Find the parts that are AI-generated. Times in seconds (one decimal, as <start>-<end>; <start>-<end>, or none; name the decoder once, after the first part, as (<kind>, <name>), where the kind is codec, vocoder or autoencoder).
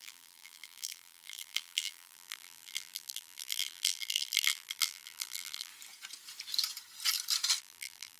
0.0-5.7 (vocoder, BigVGAN v2); 7.6-8.2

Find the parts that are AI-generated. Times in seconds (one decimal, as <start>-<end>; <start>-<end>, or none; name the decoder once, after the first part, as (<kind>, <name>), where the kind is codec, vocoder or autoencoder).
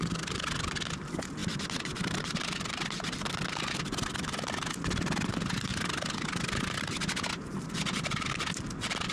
1.4-4.5 (vocoder, BigVGAN v2)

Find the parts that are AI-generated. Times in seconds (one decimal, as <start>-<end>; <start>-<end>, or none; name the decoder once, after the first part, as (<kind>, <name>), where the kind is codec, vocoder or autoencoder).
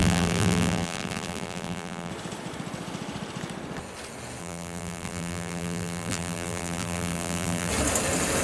0.0-2.1 (vocoder, BigVGAN v2); 4.4-7.7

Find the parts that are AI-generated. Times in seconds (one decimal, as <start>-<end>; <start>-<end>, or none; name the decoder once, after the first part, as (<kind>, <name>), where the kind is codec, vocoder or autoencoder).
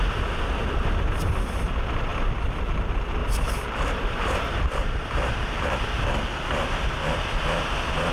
0.6-1.2 (vocoder, BigVGAN v2); 3.2-5.8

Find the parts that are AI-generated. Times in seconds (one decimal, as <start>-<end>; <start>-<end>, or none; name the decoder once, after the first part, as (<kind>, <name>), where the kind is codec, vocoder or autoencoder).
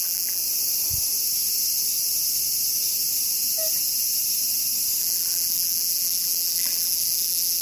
0.0-0.4 (vocoder, BigVGAN v2); 5.0-7.6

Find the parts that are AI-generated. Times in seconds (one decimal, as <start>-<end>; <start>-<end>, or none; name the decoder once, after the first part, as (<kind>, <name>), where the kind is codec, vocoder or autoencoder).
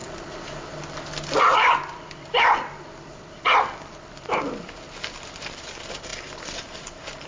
1.4-7.3 (vocoder, BigVGAN v2)